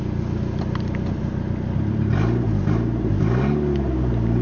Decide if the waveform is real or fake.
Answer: real